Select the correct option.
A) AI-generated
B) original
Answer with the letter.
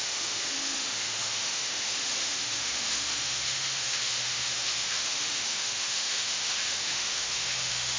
A